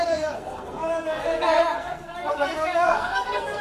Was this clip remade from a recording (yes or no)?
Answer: yes